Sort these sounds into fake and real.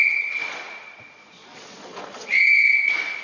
fake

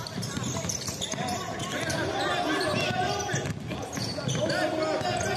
real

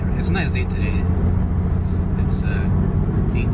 real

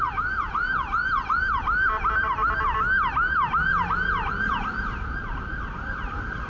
real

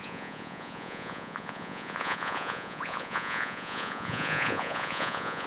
fake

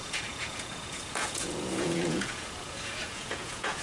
fake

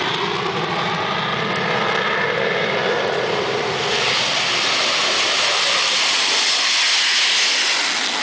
real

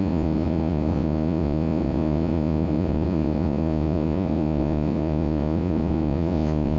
fake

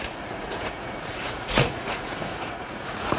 fake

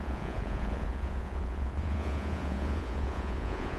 fake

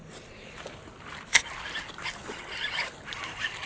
real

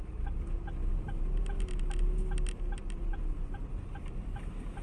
real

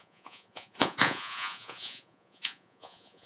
fake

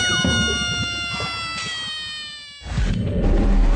real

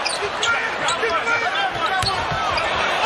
real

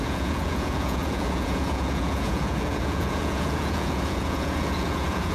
fake